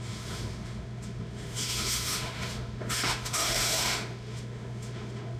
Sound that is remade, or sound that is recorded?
remade